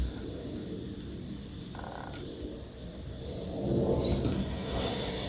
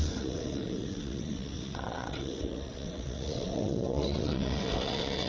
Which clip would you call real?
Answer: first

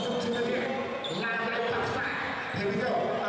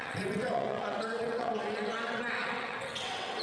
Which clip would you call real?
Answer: first